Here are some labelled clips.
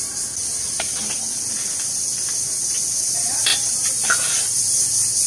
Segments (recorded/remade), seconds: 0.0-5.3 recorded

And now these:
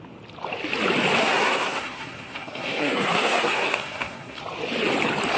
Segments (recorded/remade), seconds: 0.0-1.2 recorded; 1.2-4.4 remade; 4.4-5.4 recorded

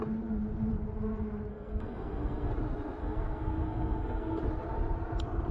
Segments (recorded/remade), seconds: 0.0-1.5 recorded; 1.5-2.5 remade; 2.5-3.0 recorded; 3.0-4.4 remade; 4.4-5.5 recorded

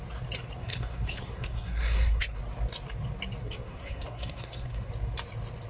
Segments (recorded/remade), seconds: 0.0-0.6 recorded; 0.6-2.4 remade; 2.4-3.4 recorded; 3.4-4.9 remade; 4.9-5.7 recorded